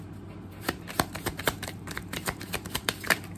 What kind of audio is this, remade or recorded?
remade